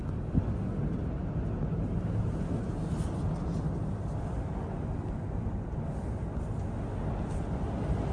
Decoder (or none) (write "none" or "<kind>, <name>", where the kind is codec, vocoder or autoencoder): none